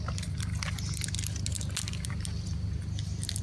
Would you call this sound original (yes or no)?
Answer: yes